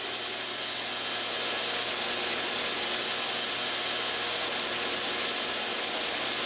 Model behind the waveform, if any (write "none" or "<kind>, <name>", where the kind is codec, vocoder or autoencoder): none